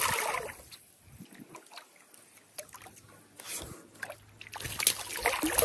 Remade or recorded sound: recorded